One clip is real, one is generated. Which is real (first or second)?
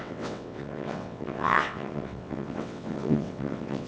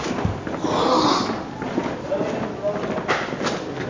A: second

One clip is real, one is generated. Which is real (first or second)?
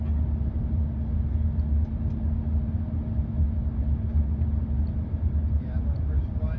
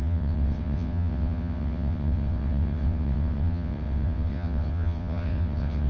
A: first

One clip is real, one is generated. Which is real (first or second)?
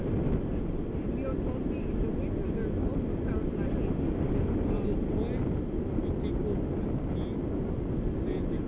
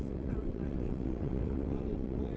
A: first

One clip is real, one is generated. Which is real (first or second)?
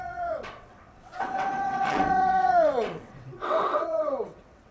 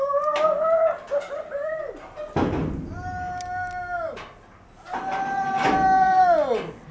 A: second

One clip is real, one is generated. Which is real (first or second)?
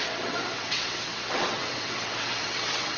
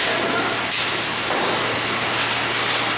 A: second